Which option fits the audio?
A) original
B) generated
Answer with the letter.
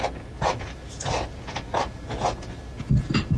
A